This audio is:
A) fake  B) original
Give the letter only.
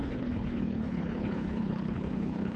A